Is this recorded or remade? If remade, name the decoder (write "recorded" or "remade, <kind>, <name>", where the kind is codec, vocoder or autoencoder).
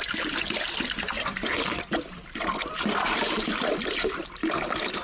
remade, vocoder, BigVGAN v2